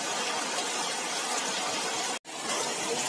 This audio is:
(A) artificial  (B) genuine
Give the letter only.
B